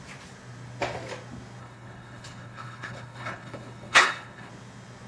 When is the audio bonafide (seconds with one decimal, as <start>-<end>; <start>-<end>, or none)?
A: 0.0-1.6; 4.5-5.1